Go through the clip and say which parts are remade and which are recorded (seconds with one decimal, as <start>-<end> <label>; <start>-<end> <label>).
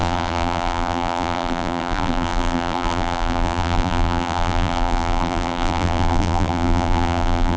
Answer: 0.0-7.6 remade